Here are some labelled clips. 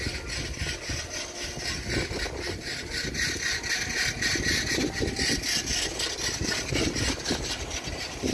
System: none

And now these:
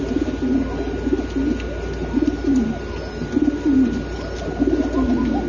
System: none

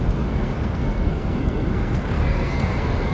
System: codec, SNAC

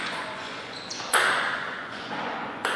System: vocoder, Vocos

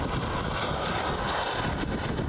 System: none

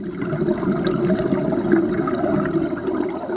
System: none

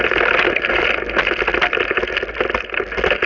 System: none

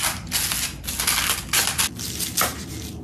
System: none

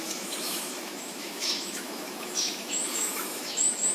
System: autoencoder, DAC-VAE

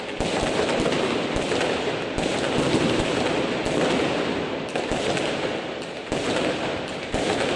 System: none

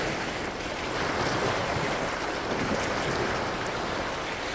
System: none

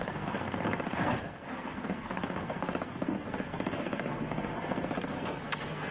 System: codec, SNAC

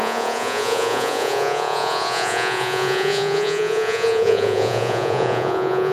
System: vocoder, Vocos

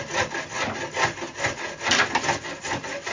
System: none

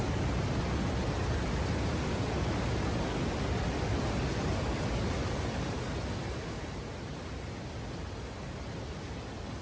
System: none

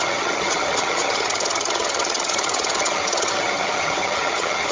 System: vocoder, HiFi-GAN